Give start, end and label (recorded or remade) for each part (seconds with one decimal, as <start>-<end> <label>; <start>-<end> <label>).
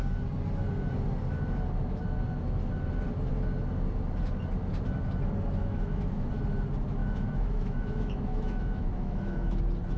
0.0-5.6 recorded; 5.6-6.3 remade; 6.3-7.0 recorded; 7.0-9.6 remade; 9.6-10.0 recorded